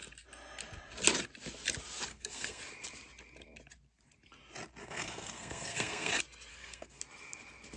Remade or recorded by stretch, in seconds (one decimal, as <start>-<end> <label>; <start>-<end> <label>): 0.0-2.1 recorded; 2.1-2.6 remade; 2.6-4.8 recorded; 4.8-6.1 remade; 6.1-6.5 recorded; 6.5-7.0 remade; 7.0-7.8 recorded